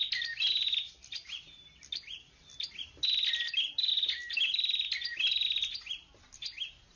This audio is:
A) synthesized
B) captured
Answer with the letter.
B